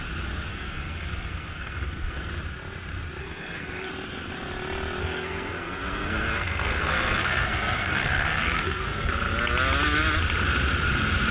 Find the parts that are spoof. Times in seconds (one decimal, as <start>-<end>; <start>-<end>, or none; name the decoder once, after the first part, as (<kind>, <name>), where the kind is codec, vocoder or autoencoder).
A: 0.5-2.3 (codec, SNAC); 3.2-3.9; 5.0-9.1